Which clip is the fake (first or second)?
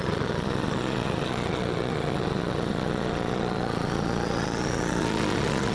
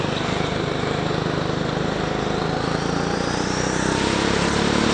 first